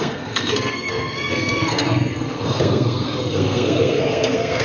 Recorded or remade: remade